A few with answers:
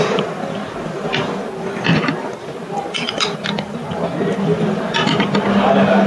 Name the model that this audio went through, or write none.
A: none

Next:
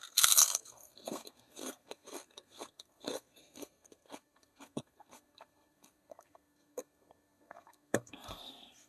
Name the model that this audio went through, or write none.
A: codec, SNAC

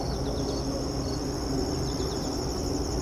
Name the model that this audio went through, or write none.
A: none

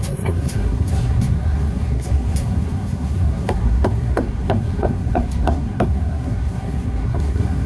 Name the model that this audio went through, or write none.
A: codec, SNAC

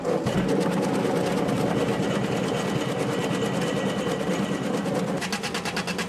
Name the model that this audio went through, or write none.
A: none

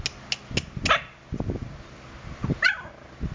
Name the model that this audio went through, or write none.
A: none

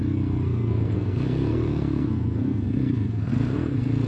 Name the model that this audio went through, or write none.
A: codec, SNAC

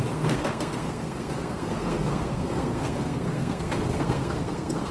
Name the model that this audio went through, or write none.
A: codec, SNAC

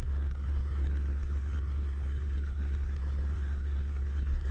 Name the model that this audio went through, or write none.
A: codec, SNAC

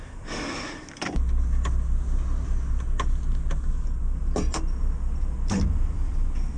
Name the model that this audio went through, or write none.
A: none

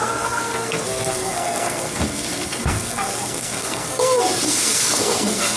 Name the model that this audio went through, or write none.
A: codec, SNAC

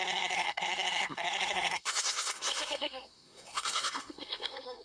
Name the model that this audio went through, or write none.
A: codec, SNAC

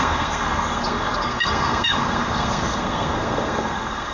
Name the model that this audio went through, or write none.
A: codec, SNAC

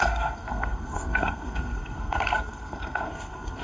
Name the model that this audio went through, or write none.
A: codec, SNAC